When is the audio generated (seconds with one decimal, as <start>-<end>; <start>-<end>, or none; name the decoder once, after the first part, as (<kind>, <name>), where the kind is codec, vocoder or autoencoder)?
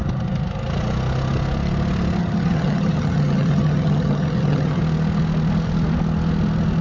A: 2.2-4.8 (vocoder, HiFi-GAN)